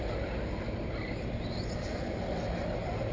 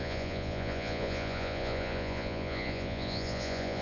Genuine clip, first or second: first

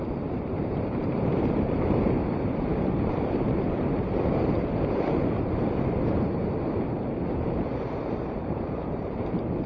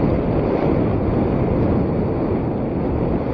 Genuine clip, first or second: second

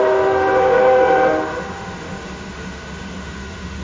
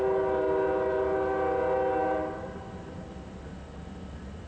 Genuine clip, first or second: second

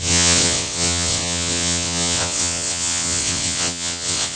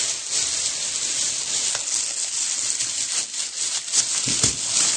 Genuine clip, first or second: second